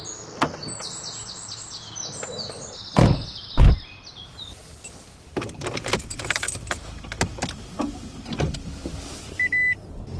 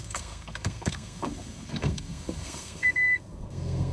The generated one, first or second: second